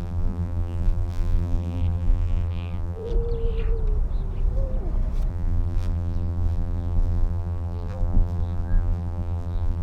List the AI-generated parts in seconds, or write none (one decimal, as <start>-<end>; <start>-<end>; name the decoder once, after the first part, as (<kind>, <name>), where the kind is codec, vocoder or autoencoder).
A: 0.0-3.1 (vocoder, BigVGAN v2); 5.3-9.8